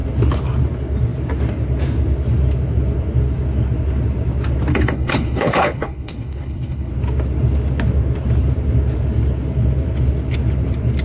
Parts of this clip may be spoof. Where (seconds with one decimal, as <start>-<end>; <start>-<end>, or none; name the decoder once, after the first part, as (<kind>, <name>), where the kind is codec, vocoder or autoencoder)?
4.7-6.9 (codec, HILCodec)